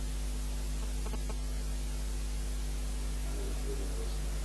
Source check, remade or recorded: recorded